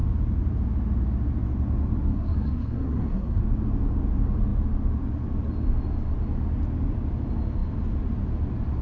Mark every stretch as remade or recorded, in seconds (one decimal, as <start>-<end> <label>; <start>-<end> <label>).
0.0-2.1 recorded; 2.1-3.4 remade; 3.4-8.8 recorded